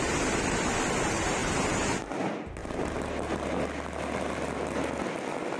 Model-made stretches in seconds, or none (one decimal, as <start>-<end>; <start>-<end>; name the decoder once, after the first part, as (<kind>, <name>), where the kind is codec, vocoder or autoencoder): none